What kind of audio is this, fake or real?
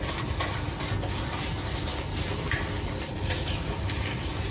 real